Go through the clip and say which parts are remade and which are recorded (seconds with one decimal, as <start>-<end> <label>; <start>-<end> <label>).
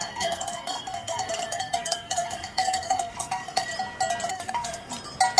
0.0-3.7 remade; 3.7-4.3 recorded; 4.3-4.9 remade; 4.9-5.4 recorded